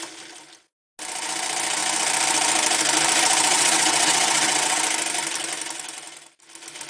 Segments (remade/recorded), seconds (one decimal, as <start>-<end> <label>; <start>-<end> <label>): 0.0-3.5 recorded; 3.5-4.8 remade; 4.8-6.9 recorded